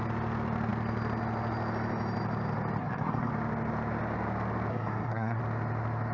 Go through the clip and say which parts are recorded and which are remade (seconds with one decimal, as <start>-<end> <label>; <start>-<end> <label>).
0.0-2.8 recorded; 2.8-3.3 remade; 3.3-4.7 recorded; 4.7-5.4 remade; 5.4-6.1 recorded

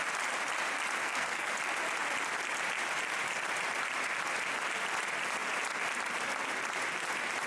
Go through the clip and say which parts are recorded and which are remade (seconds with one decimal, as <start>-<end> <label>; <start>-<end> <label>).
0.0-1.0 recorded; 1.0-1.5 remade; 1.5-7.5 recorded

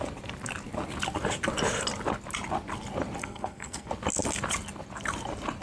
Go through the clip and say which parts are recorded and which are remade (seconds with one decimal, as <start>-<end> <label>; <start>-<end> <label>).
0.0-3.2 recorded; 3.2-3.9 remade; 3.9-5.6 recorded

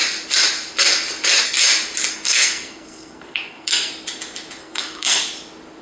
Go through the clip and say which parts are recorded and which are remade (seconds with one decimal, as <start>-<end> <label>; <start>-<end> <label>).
0.0-2.1 recorded; 2.1-3.9 remade; 3.9-4.6 recorded; 4.6-5.2 remade; 5.2-5.8 recorded

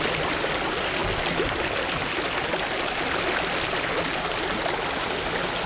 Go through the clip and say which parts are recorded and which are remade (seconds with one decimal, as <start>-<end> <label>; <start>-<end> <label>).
0.0-5.7 recorded

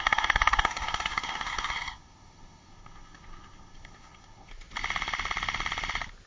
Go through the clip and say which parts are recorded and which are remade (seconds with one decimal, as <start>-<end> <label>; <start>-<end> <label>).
0.0-4.5 remade; 4.5-6.3 recorded

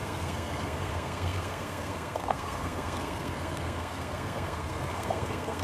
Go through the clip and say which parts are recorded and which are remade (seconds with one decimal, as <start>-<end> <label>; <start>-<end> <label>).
0.0-5.6 remade

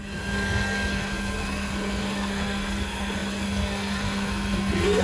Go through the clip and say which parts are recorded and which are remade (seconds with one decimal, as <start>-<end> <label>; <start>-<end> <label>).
0.0-5.0 remade